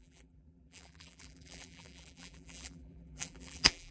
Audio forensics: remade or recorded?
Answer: remade